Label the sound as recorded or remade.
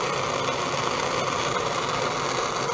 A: recorded